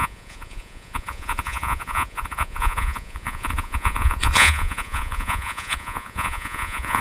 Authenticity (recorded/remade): remade